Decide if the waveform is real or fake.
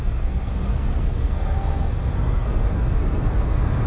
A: fake